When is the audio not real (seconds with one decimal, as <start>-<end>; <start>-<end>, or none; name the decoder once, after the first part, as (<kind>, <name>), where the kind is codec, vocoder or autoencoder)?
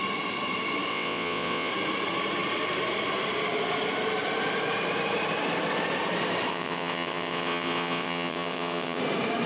0.9-1.7 (vocoder, WaveNeXt); 6.5-9.0